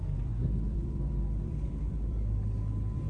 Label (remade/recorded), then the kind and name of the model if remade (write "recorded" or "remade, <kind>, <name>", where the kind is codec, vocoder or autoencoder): remade, vocoder, BigVGAN v2